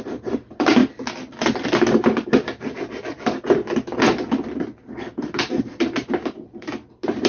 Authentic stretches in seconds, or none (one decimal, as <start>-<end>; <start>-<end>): 0.0-7.3